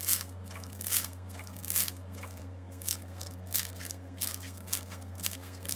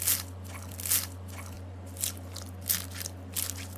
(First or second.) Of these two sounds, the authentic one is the second